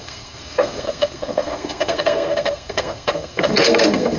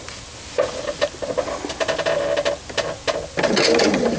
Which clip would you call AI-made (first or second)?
first